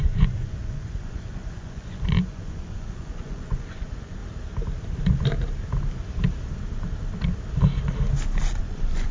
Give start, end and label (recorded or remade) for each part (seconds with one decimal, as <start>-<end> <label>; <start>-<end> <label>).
0.0-4.2 remade; 4.2-8.6 recorded; 8.6-9.1 remade